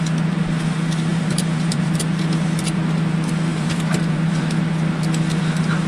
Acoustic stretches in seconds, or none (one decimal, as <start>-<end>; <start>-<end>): 0.0-1.1; 2.0-3.5; 4.4-5.9